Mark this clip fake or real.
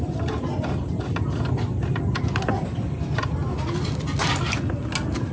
real